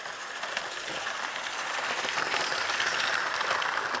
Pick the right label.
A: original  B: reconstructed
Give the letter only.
A